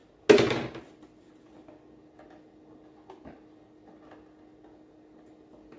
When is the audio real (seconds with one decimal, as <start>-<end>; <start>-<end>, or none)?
0.0-5.8